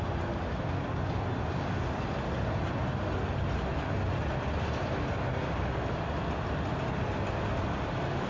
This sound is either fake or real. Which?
real